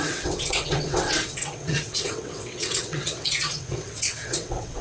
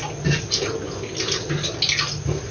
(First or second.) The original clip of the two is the second